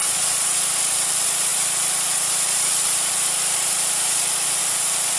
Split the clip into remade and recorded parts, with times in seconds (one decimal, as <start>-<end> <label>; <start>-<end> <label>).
0.0-1.1 recorded; 1.1-5.2 remade